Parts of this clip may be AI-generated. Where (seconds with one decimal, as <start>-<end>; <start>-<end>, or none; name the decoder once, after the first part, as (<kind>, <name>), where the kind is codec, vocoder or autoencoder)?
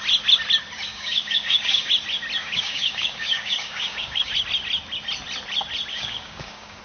0.9-1.9 (codec, DAC); 2.4-4.3; 5.9-6.8